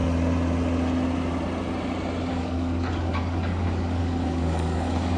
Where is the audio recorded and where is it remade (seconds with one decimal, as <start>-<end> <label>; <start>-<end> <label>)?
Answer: 0.0-2.3 recorded; 2.3-5.2 remade